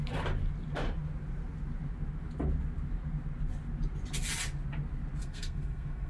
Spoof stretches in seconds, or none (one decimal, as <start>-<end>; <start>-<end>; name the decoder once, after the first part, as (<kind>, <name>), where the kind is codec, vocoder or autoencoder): 5.2-6.1 (codec, SNAC)